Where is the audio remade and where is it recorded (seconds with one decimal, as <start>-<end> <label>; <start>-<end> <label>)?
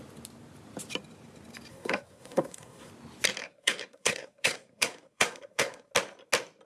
0.0-1.7 recorded; 1.7-2.9 remade; 2.9-3.4 recorded; 3.4-5.9 remade; 5.9-6.7 recorded